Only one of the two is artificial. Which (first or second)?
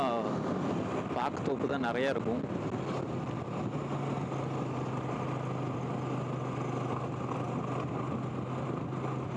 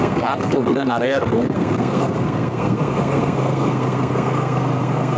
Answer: second